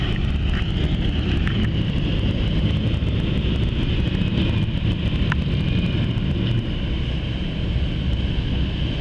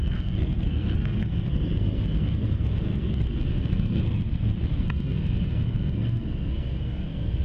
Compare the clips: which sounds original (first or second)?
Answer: first